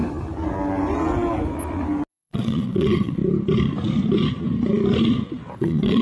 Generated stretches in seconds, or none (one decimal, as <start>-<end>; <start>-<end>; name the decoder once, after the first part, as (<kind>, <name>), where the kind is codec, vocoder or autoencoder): 2.1-3.2 (vocoder, WaveNeXt); 5.5-6.0